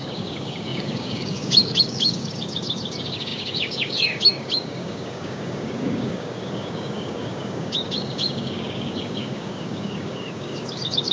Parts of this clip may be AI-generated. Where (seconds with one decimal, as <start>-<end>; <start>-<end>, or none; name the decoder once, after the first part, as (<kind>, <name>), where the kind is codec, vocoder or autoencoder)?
0.0-11.1 (codec, DAC)